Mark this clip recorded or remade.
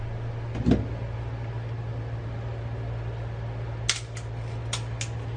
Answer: recorded